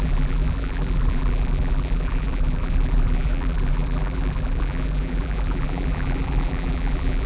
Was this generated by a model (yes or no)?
yes